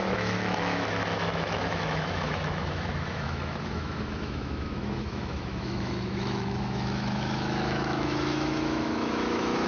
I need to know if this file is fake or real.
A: fake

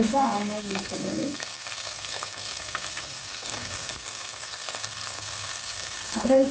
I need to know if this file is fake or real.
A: fake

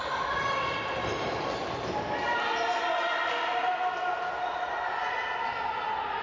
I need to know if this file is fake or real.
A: real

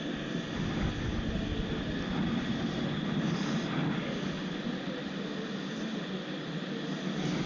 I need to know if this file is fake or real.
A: real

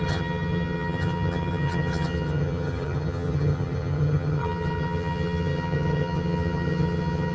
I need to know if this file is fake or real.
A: fake